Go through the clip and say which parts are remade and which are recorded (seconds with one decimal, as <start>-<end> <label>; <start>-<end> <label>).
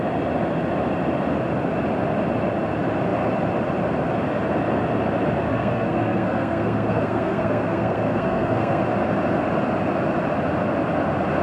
0.0-5.5 recorded; 5.5-8.8 remade; 8.8-11.4 recorded